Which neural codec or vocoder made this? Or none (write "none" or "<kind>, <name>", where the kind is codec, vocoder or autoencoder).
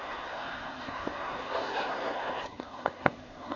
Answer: codec, SNAC